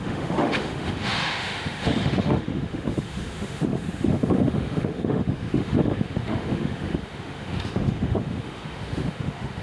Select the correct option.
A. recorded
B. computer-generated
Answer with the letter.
B